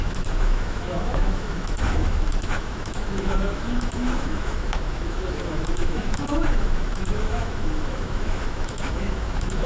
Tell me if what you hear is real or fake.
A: fake